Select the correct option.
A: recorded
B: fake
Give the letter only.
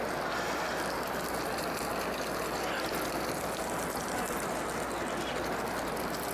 A